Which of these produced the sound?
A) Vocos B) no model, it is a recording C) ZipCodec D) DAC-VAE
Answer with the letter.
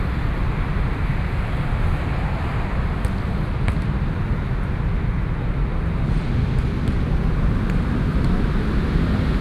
B